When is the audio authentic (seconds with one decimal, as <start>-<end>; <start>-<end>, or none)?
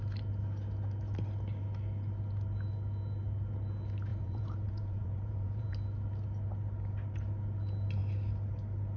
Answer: 0.0-4.1; 5.7-9.0